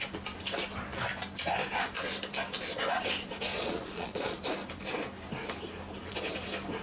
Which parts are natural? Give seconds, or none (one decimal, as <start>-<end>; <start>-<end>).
0.0-3.5; 4.4-6.8